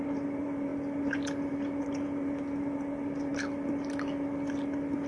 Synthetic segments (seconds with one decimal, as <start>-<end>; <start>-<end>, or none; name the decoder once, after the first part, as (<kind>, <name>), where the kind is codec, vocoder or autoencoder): 0.0-0.7 (vocoder, BigVGAN v2); 1.5-3.3